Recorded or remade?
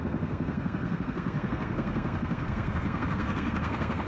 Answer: remade